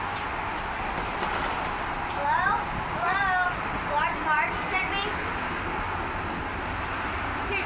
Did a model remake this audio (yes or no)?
no